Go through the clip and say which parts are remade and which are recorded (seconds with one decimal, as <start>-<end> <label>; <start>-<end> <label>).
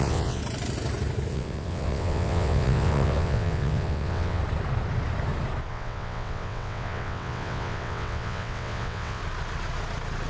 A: 0.0-0.4 remade; 0.4-1.3 recorded; 1.3-4.4 remade; 4.4-5.7 recorded; 5.7-9.2 remade; 9.2-10.3 recorded